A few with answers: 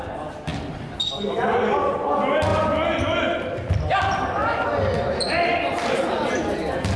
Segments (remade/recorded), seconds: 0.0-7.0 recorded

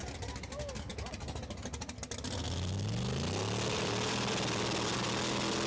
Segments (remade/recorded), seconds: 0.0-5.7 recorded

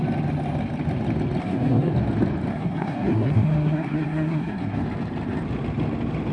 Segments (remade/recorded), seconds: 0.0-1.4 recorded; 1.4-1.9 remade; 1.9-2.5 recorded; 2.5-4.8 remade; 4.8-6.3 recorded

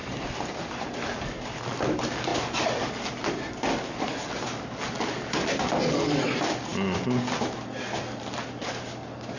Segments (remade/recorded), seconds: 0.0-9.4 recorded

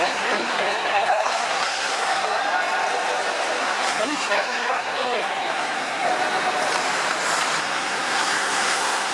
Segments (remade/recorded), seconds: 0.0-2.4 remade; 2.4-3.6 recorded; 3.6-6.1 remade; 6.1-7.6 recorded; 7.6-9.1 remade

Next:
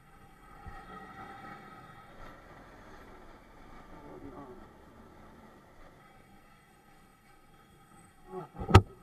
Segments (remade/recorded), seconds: 0.0-2.1 remade; 2.1-6.0 recorded; 6.0-9.0 remade

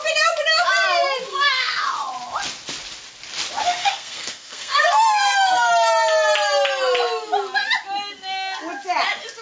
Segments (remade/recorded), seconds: 0.0-1.3 recorded; 1.3-1.8 remade; 1.8-3.8 recorded; 3.8-5.7 remade; 5.7-9.4 recorded

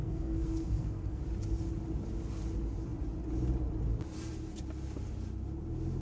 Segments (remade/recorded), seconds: 0.0-1.2 remade; 1.2-6.0 recorded